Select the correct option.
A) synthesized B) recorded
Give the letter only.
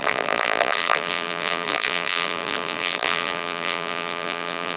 A